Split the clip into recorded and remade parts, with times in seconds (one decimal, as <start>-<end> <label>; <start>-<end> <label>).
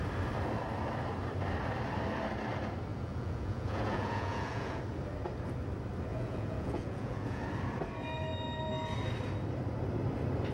0.0-2.9 recorded; 2.9-4.8 remade; 4.8-6.1 recorded; 6.1-7.4 remade; 7.4-10.5 recorded